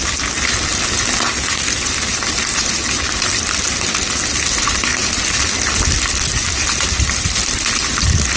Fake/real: real